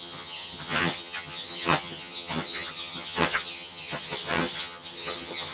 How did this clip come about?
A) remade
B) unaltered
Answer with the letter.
A